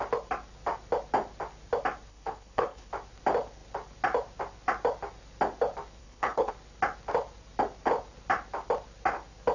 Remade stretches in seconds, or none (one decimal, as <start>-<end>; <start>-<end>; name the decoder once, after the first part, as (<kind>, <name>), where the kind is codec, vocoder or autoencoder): 2.1-2.9 (codec, HILCodec); 6.0-6.5